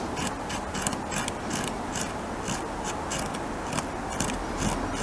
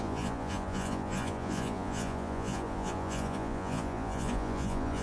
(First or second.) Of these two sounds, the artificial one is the second